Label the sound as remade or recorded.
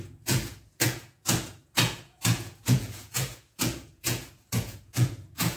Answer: remade